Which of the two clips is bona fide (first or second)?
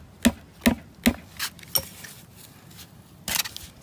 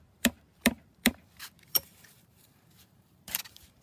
first